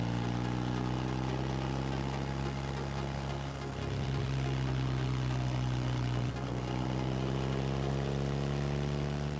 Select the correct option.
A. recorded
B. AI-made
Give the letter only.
A